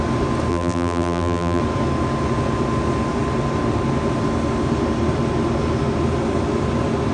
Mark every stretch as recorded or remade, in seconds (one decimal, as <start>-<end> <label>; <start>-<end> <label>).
0.0-0.5 recorded; 0.5-1.6 remade; 1.6-7.1 recorded